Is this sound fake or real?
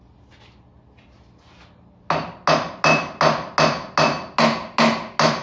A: real